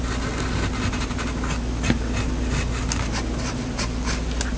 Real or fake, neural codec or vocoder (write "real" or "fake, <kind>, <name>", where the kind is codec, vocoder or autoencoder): real